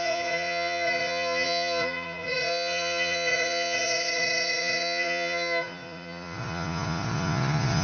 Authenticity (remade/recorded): remade